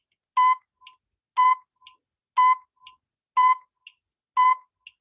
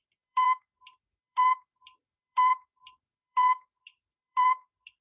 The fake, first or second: second